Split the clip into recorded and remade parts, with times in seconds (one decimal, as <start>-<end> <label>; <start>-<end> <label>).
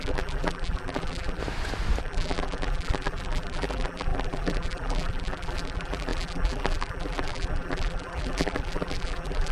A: 0.0-1.4 remade; 1.4-2.0 recorded; 2.0-9.5 remade